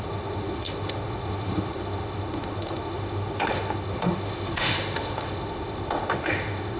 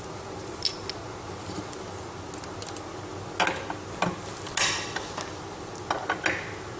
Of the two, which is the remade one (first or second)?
first